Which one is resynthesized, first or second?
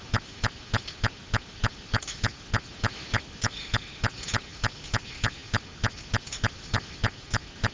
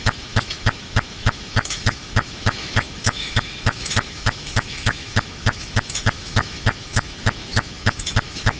second